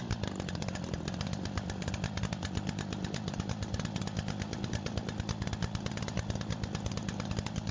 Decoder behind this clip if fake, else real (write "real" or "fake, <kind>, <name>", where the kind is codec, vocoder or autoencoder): fake, vocoder, BigVGAN v2